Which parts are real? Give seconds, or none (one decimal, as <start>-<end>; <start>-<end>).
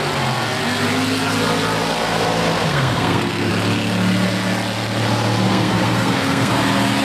0.0-2.7; 3.5-5.5; 6.5-7.0